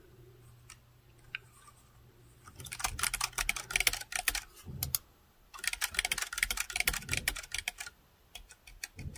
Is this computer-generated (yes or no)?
no